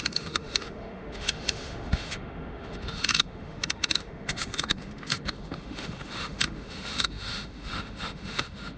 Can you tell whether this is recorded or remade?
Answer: remade